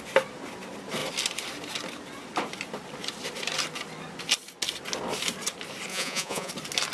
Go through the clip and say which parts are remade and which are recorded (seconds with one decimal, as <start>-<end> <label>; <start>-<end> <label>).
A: 0.0-5.9 recorded; 5.9-6.5 remade; 6.5-6.9 recorded